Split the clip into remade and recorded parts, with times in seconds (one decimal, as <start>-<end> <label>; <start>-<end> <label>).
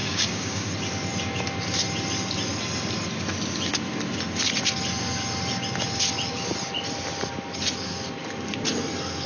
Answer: 0.0-0.7 remade; 0.7-9.3 recorded